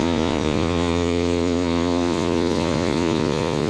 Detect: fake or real fake